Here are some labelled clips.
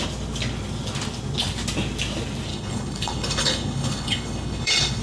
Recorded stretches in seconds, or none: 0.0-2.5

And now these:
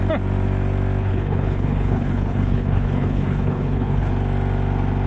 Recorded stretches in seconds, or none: 0.0-1.0; 4.1-5.1

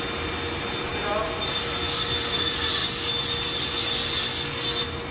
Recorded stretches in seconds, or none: 0.0-5.1

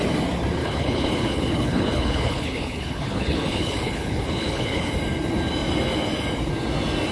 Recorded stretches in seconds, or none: 0.0-0.6; 4.9-7.1

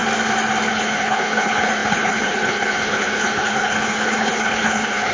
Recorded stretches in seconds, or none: 0.0-0.7

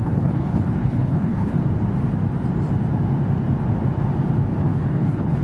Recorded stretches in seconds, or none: 1.5-4.6

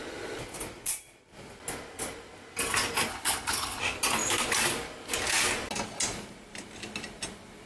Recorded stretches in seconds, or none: 0.0-3.1; 3.8-7.7